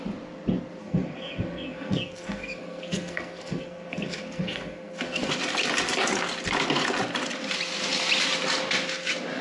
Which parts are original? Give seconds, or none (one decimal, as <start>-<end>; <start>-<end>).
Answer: 0.0-0.8; 5.3-9.4